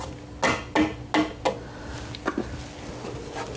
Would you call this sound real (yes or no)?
yes